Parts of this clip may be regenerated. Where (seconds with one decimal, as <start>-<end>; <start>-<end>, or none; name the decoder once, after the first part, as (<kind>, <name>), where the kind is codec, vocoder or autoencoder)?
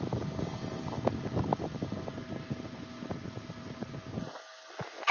none